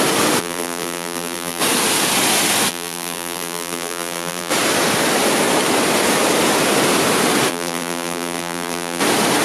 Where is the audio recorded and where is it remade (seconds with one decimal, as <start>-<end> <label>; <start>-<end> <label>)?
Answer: 0.0-0.4 recorded; 0.4-1.6 remade; 1.6-2.7 recorded; 2.7-4.5 remade; 4.5-7.5 recorded; 7.5-9.0 remade; 9.0-9.4 recorded